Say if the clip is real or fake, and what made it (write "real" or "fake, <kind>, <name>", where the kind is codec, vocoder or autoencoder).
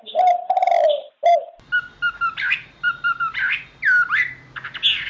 real